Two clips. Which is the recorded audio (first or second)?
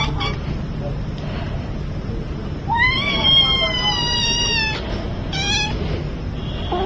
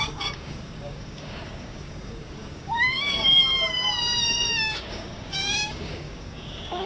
first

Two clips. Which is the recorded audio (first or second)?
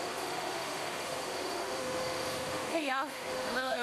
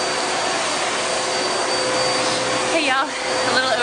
second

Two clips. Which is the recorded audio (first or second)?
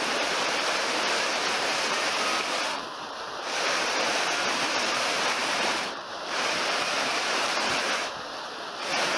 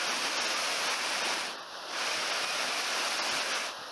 second